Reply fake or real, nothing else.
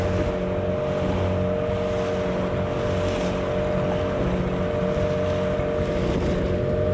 real